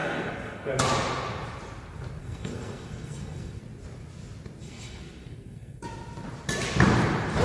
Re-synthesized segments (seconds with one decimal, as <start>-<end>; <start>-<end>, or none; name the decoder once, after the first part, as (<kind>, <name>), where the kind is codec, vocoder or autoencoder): 0.0-0.7 (codec, SNAC); 2.2-3.6; 4.6-5.8